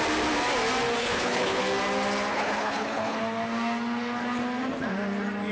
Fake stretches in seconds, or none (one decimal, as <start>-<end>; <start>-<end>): 1.0-1.6; 2.3-3.2